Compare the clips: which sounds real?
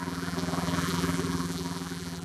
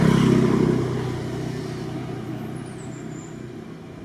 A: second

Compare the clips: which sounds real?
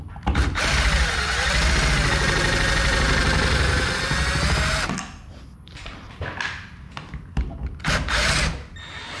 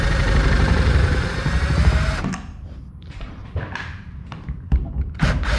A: first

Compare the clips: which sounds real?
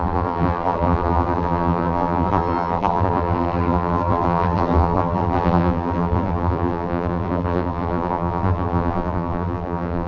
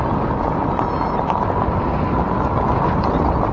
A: second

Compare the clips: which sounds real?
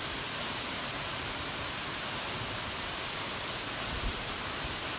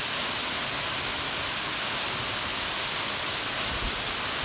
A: second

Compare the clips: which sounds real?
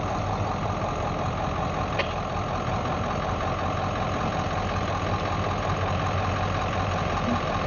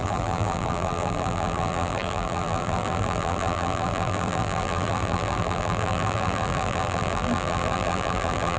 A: first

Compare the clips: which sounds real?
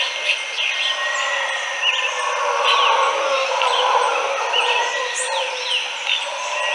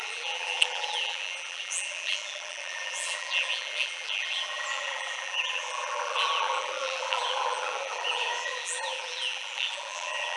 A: first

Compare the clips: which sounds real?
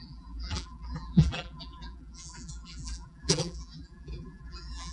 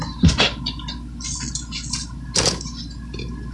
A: second